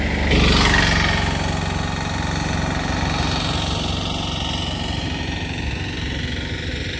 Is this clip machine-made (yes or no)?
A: no